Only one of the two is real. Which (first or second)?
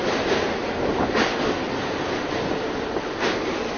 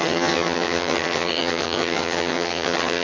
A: first